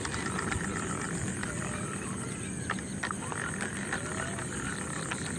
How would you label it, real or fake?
real